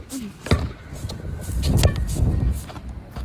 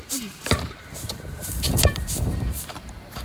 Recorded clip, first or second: first